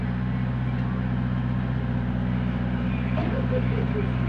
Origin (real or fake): real